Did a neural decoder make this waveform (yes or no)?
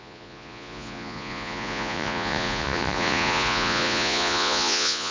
yes